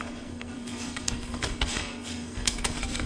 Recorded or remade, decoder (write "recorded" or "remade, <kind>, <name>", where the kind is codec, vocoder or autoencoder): remade, codec, SNAC